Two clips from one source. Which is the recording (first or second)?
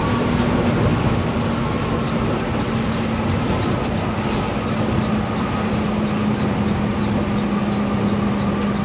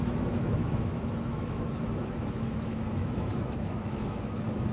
first